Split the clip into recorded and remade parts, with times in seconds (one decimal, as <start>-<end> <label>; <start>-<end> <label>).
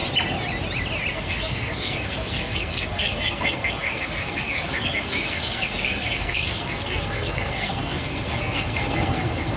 0.0-1.1 recorded; 1.1-9.6 remade